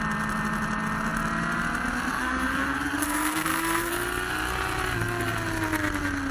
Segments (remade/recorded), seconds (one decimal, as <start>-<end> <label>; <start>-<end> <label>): 0.0-2.1 recorded; 2.1-3.9 remade; 3.9-6.3 recorded